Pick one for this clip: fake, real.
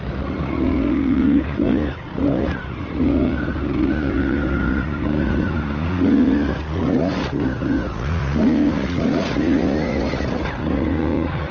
fake